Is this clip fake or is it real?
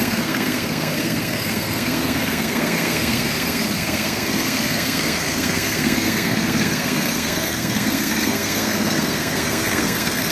fake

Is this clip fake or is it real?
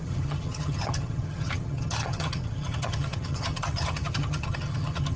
fake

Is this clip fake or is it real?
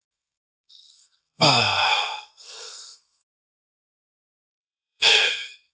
fake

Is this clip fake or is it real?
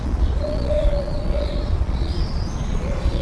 fake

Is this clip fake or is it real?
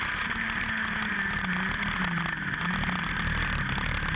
real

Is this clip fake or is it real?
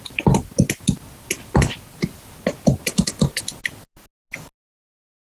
real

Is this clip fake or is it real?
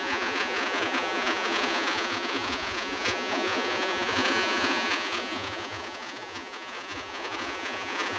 fake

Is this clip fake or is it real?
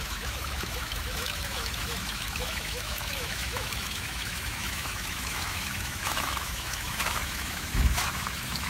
fake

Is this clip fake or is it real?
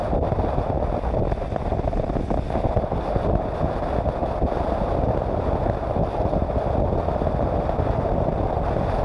real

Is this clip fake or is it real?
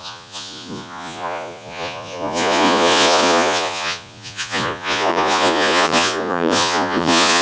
fake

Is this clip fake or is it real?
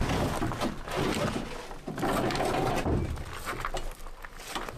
real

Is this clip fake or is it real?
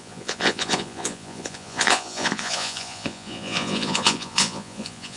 fake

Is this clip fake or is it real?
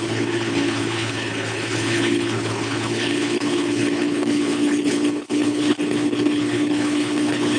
fake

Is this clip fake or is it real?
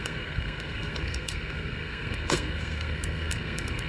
fake